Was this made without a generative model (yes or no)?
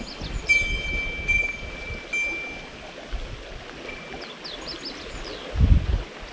yes